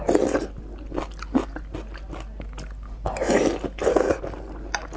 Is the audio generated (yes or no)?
no